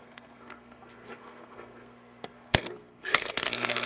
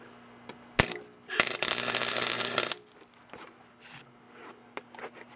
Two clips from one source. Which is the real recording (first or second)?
second